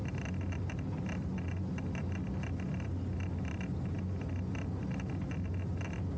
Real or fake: real